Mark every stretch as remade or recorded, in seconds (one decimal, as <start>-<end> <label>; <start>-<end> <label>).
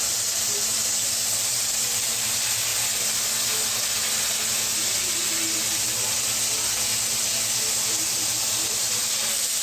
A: 0.0-2.7 remade; 2.7-7.9 recorded; 7.9-9.6 remade